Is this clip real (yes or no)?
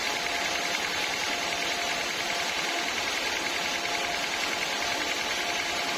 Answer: yes